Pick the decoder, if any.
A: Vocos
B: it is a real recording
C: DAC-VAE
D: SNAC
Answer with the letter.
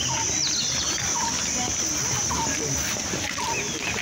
B